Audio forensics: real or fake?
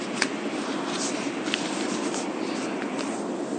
real